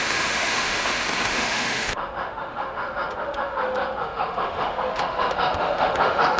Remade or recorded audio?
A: remade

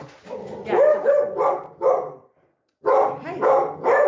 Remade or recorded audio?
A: recorded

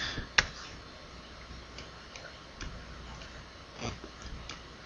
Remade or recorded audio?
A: recorded